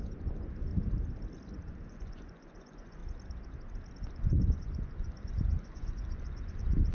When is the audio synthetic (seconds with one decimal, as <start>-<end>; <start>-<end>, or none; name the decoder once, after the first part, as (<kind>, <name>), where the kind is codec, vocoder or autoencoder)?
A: 0.0-0.7 (vocoder, Vocos); 1.8-3.0; 4.0-6.9